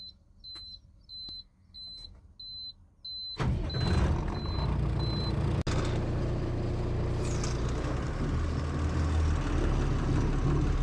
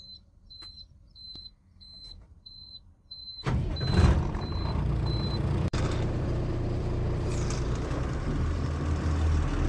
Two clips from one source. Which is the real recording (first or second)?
first